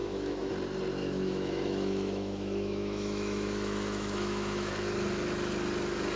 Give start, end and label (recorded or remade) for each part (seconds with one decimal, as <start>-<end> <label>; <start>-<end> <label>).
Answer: 0.0-0.5 remade; 0.5-1.0 recorded; 1.0-4.7 remade; 4.7-6.2 recorded